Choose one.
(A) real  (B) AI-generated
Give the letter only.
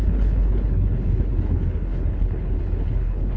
B